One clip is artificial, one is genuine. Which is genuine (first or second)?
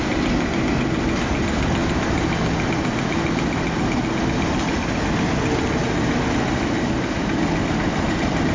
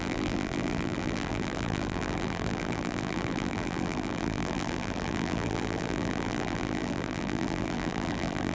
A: first